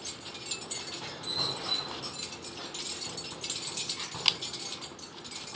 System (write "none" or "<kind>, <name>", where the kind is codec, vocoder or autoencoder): none